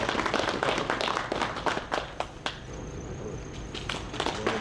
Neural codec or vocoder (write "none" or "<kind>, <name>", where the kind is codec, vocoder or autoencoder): none